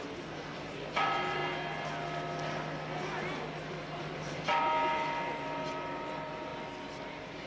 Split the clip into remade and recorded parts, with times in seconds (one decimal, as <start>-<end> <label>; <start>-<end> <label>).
0.0-1.4 remade; 1.4-4.0 recorded; 4.0-6.5 remade; 6.5-7.1 recorded; 7.1-7.5 remade